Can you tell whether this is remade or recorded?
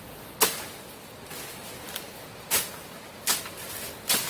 recorded